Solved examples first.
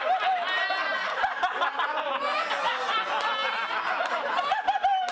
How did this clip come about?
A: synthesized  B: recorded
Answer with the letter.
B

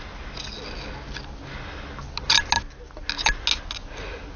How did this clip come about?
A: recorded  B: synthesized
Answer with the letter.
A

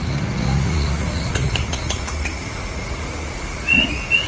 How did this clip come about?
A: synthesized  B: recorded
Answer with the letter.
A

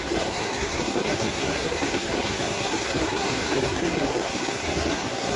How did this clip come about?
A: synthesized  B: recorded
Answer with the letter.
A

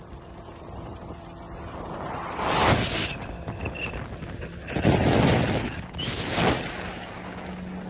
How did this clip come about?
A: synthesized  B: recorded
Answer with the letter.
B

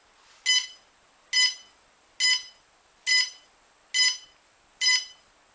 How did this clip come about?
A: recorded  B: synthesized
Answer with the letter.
A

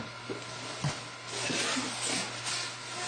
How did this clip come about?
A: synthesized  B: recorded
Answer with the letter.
B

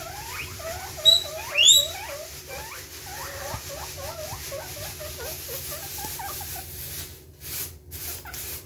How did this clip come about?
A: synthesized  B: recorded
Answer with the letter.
B